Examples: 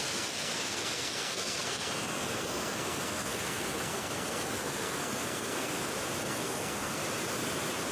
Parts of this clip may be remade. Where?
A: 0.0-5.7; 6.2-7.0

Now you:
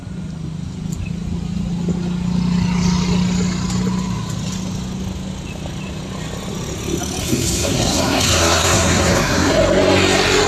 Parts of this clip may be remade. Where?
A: 7.2-9.5

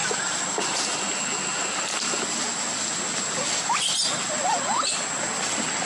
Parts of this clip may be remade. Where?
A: none

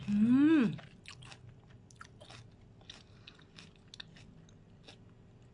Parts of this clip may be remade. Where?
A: none

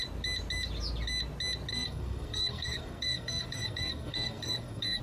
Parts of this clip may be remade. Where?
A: 1.7-5.0